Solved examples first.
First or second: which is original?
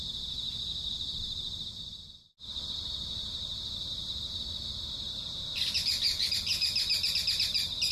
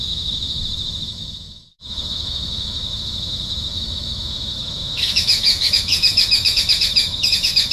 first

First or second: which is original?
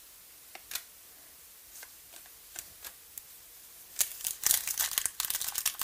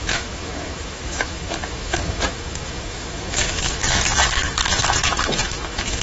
first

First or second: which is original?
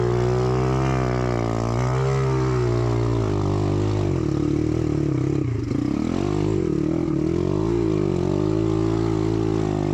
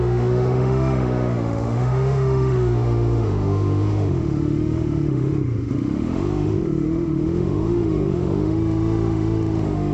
first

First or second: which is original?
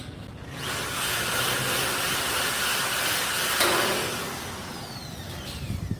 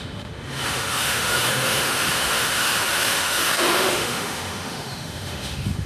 first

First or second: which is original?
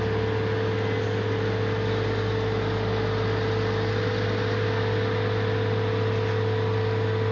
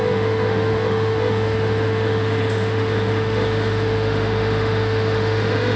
first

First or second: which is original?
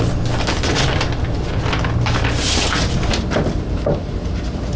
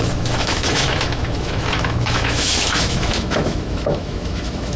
first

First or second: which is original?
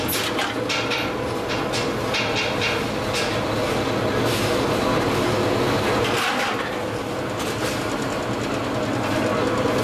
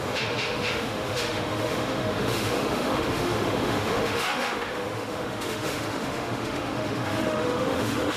first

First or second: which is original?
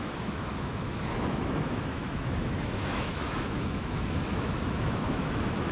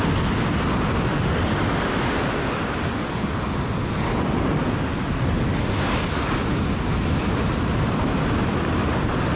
second